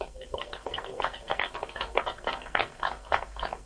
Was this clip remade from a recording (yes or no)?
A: yes